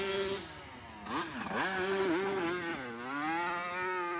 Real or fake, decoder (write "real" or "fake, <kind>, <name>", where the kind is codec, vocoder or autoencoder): real